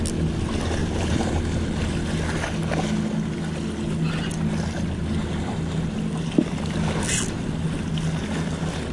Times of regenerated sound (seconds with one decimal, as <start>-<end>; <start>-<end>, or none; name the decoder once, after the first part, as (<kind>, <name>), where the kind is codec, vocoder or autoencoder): 0.8-1.4 (vocoder, BigVGAN v2)